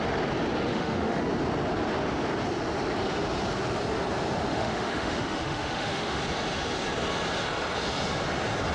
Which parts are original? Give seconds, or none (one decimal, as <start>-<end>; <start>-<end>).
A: 0.0-0.7; 1.2-4.5; 6.2-8.7